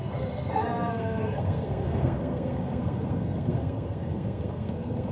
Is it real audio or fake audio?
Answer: fake